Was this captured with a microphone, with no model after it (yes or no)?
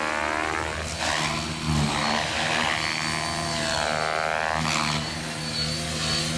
yes